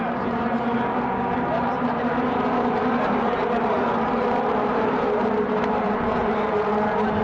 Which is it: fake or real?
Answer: fake